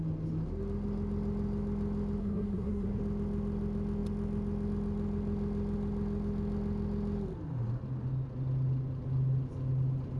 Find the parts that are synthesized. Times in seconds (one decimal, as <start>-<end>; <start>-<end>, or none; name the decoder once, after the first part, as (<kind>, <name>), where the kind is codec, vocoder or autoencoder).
2.2-3.0 (codec, SNAC)